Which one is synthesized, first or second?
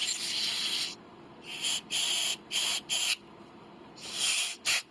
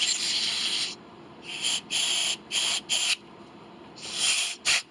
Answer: second